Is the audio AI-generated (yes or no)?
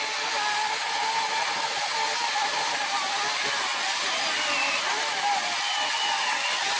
no